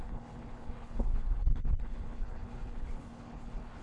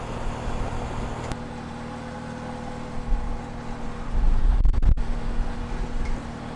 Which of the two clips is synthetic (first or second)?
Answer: first